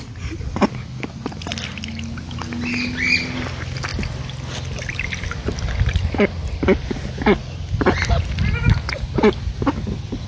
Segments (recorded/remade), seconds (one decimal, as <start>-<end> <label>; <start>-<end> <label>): 0.0-10.3 recorded